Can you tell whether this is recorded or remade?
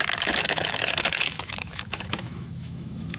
remade